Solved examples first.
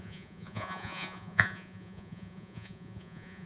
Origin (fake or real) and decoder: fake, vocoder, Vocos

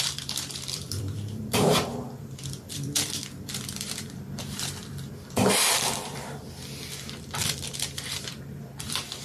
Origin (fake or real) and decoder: fake, vocoder, BigVGAN v2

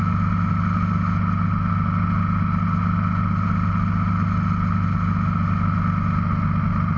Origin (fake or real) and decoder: real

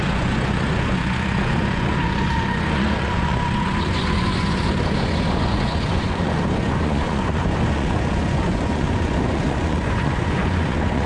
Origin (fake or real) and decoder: fake, vocoder, Vocos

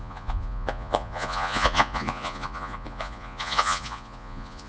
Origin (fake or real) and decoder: fake, vocoder, Vocos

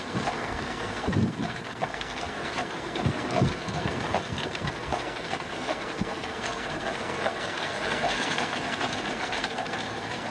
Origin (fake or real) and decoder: fake, codec, SNAC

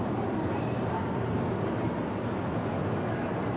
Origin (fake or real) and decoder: real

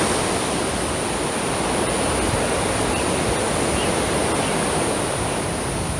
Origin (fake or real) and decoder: real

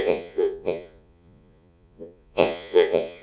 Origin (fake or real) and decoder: fake, vocoder, Vocos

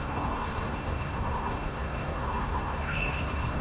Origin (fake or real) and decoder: fake, codec, SNAC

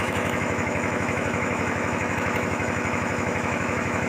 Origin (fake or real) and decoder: fake, autoencoder, DAC-VAE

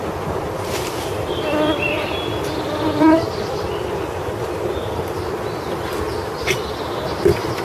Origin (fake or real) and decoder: fake, vocoder, BigVGAN v2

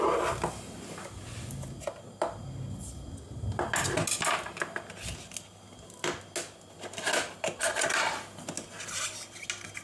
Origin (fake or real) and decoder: real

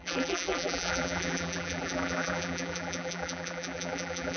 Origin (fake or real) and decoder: fake, vocoder, BigVGAN v2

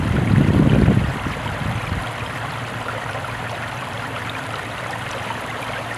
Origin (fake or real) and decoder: fake, vocoder, BigVGAN v2